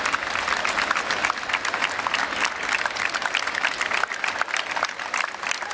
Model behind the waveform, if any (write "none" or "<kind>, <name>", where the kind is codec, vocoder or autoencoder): none